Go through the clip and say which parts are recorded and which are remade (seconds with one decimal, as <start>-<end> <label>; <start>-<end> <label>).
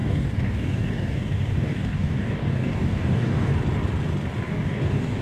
0.0-3.5 remade; 3.5-4.5 recorded; 4.5-5.2 remade